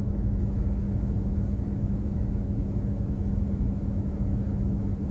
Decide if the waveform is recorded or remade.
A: remade